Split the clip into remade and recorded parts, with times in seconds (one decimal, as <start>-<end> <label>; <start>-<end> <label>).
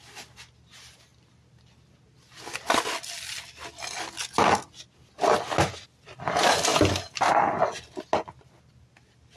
0.0-9.4 recorded